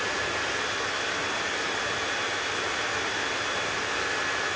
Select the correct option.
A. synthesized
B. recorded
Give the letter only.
B